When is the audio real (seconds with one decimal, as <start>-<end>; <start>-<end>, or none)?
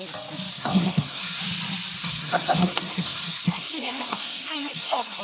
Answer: 0.0-0.5; 1.4-2.0